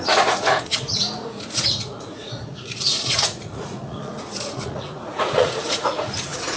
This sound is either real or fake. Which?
fake